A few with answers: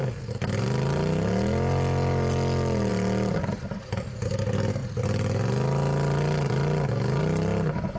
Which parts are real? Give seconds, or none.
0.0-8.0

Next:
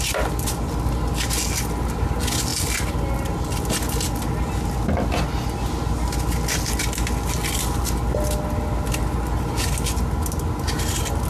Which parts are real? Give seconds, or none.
0.0-11.3

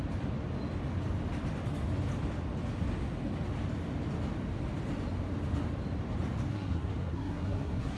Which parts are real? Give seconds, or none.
0.0-6.5

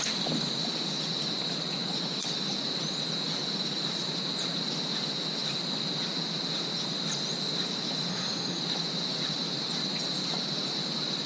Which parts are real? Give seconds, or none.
0.0-8.1; 8.6-11.3

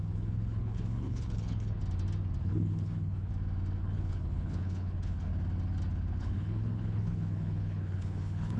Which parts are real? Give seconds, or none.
1.8-2.4; 3.3-3.8; 5.3-6.2

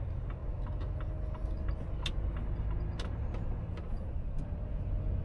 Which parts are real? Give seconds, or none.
0.0-5.2

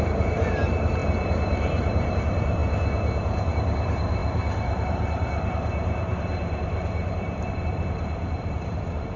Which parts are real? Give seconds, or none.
2.6-3.5

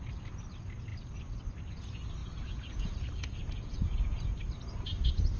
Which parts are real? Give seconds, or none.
0.0-2.2; 4.4-5.4